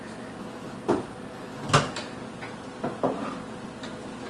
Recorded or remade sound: recorded